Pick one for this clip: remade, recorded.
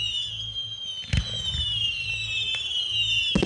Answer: recorded